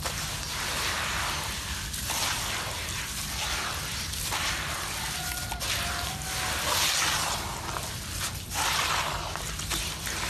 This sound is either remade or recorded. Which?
recorded